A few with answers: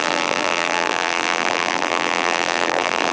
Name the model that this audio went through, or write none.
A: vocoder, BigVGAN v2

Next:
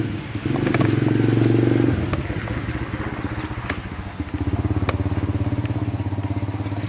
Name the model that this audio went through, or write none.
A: none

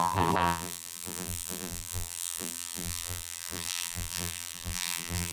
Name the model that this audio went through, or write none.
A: vocoder, BigVGAN v2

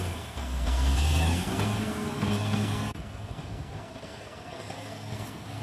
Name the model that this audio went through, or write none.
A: codec, SNAC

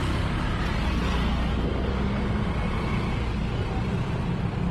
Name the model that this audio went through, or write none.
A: none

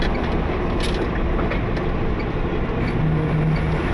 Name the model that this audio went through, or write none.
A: none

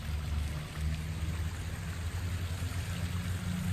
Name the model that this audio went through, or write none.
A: none